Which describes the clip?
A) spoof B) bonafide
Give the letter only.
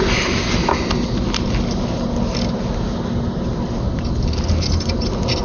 B